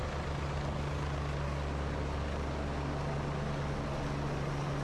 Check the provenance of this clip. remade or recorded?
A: recorded